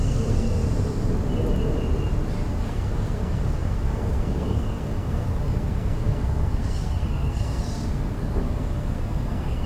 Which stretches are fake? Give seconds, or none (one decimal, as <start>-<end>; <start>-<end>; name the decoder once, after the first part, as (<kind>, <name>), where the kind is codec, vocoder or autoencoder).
0.0-0.6 (codec, SNAC); 2.5-9.7